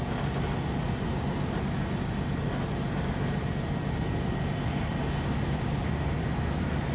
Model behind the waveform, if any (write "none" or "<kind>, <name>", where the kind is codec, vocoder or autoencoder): none